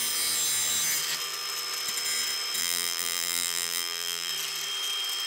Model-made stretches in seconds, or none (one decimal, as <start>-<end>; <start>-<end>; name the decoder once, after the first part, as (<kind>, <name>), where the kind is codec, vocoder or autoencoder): 2.6-4.3 (vocoder, BigVGAN v2)